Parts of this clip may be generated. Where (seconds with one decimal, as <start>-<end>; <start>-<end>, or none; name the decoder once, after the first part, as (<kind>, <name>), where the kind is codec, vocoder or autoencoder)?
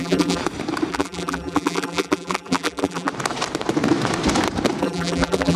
0.0-0.4 (vocoder, BigVGAN v2); 0.9-3.1; 4.8-5.6